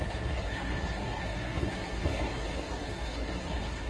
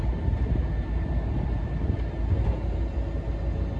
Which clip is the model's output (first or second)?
first